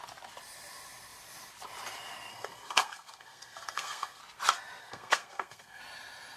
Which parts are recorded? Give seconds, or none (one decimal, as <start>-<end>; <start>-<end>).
0.0-2.3; 4.2-4.8; 5.8-6.4